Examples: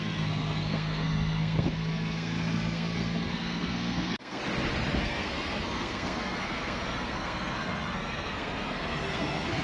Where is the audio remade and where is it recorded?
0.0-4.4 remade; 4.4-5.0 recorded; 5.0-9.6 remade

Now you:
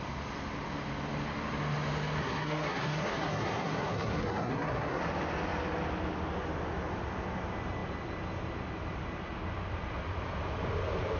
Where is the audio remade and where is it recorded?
0.0-2.2 recorded; 2.2-5.0 remade; 5.0-11.2 recorded